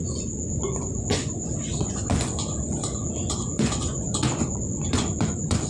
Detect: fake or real fake